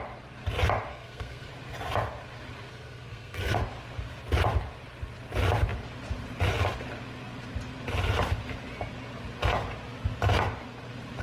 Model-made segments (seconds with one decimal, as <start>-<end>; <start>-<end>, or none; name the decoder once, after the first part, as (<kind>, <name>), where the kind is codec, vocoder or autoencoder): 0.9-1.5 (codec, SNAC); 2.7-3.6